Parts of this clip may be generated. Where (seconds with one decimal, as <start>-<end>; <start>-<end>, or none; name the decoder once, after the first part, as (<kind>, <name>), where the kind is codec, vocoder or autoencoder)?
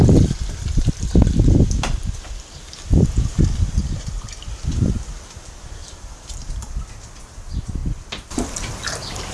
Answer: 3.8-4.5 (vocoder, BigVGAN v2); 5.8-6.7